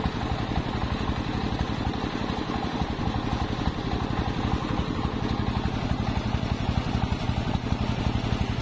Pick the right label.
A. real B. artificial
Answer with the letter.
A